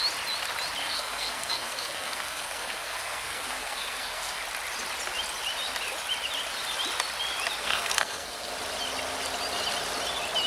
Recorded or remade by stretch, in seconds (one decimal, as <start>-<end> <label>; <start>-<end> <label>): 0.0-0.8 recorded; 0.8-4.4 remade; 4.4-7.6 recorded; 7.6-8.5 remade; 8.5-10.5 recorded

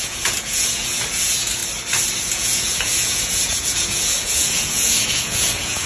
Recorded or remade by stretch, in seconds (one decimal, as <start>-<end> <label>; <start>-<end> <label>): 0.0-1.6 remade; 1.6-2.2 recorded; 2.2-5.9 remade

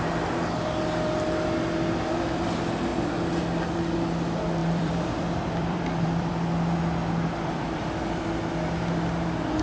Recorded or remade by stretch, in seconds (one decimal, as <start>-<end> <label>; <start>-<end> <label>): 0.0-4.6 recorded; 4.6-6.3 remade; 6.3-9.6 recorded

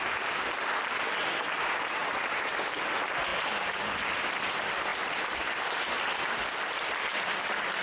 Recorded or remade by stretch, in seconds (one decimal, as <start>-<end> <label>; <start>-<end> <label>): 0.0-2.0 recorded; 2.0-2.8 remade; 2.8-3.3 recorded; 3.3-3.8 remade; 3.8-4.9 recorded; 4.9-5.5 remade; 5.5-7.8 recorded

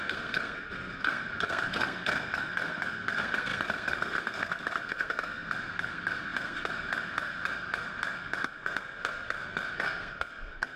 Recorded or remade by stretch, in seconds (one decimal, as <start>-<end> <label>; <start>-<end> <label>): 0.0-10.8 remade